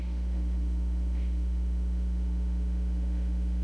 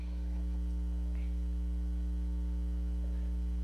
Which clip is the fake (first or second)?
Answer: first